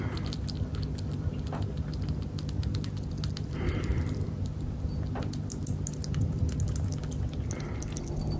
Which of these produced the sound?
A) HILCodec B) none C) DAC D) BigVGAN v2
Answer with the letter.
B